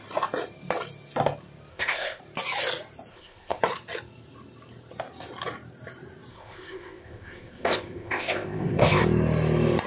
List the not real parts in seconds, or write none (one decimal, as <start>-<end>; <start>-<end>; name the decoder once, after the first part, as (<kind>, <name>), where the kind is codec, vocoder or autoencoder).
1.7-2.2 (codec, ZipCodec); 3.1-3.6; 6.3-9.0